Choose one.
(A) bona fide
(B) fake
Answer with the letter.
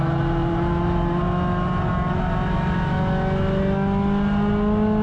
A